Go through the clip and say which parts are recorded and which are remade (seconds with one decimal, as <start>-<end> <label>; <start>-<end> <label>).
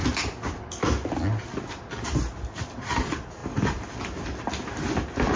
0.0-5.4 recorded